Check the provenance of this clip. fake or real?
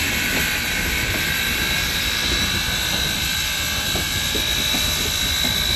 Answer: fake